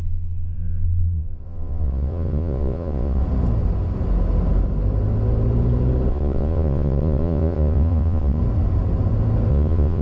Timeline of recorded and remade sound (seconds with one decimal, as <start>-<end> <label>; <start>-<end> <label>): 0.0-3.2 remade; 3.2-6.1 recorded; 6.1-8.4 remade; 8.4-9.5 recorded; 9.5-10.0 remade